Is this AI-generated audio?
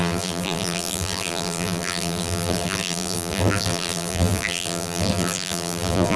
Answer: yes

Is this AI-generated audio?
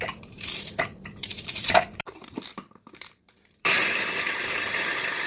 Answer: yes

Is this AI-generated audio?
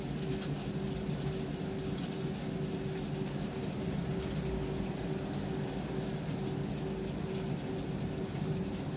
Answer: no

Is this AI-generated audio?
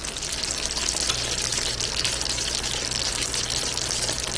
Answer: yes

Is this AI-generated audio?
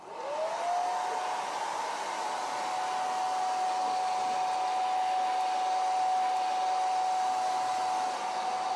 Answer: no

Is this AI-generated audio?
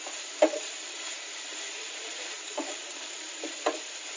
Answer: yes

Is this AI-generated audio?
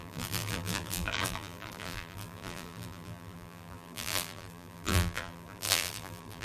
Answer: yes